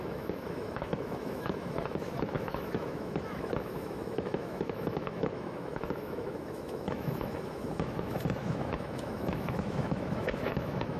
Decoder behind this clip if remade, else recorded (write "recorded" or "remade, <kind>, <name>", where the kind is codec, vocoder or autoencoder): remade, autoencoder, DAC-VAE